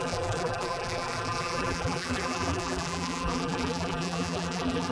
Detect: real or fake fake